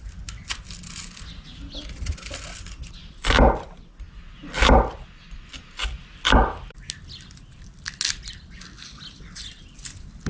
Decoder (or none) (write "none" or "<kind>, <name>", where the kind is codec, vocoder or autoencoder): none